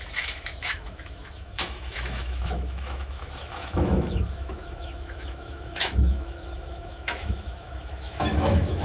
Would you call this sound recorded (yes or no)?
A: no